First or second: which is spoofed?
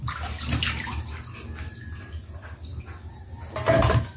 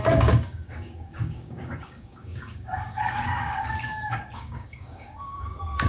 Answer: second